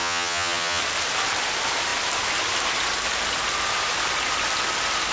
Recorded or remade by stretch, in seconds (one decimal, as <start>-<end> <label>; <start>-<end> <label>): 0.0-0.8 remade; 0.8-5.1 recorded